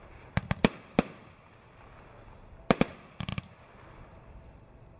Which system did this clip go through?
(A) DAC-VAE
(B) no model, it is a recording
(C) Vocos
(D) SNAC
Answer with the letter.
B